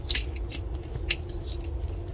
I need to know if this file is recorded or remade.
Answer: recorded